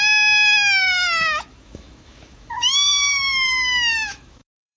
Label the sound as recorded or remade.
remade